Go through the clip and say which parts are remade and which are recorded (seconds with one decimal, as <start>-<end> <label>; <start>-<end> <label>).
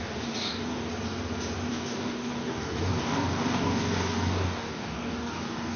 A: 0.0-0.9 remade; 0.9-1.7 recorded; 1.7-5.8 remade